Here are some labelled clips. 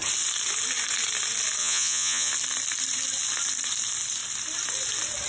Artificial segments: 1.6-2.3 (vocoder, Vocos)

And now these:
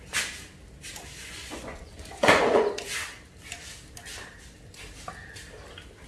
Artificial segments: 1.2-2.7 (vocoder, Vocos)

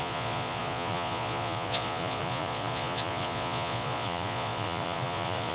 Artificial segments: 0.0-5.5 (vocoder, Vocos)